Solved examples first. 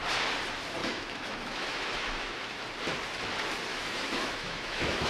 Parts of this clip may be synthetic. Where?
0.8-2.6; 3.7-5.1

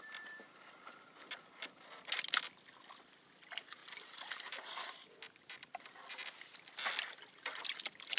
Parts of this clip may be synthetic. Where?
none

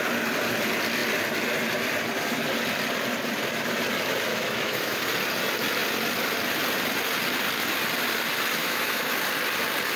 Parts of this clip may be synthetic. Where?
4.3-5.0; 8.6-9.1

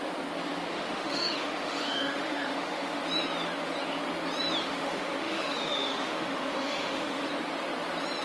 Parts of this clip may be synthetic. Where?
0.7-3.0; 4.6-7.3